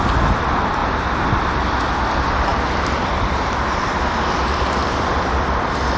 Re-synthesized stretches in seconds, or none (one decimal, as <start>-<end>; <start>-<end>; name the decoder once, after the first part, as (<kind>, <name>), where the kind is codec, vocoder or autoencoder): none